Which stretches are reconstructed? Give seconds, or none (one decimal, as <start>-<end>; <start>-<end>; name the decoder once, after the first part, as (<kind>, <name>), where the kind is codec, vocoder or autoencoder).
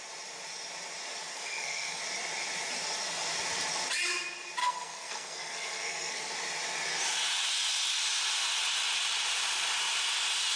1.3-2.0 (codec, SNAC); 4.6-6.3